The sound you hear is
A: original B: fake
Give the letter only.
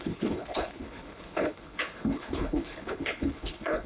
B